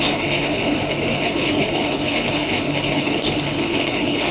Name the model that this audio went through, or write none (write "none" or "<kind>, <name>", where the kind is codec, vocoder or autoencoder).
codec, HILCodec